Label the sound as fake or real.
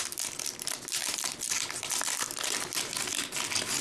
real